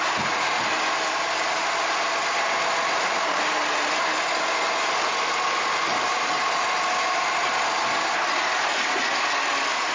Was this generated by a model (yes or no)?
no